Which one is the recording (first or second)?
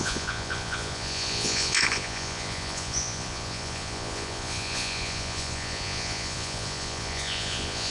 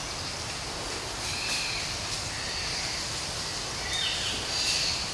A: second